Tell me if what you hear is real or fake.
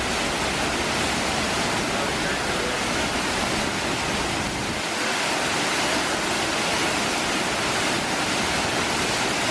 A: real